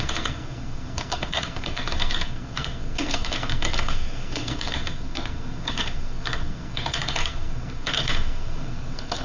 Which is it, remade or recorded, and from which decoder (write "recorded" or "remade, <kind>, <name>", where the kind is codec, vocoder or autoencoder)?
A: remade, codec, SNAC